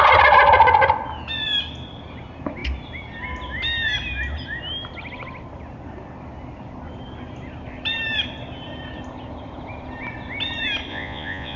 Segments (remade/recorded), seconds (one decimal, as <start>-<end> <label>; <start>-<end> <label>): 0.0-10.9 recorded; 10.9-11.6 remade